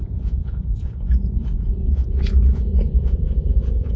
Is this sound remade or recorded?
remade